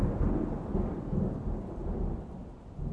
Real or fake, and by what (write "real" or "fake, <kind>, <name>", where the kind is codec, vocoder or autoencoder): real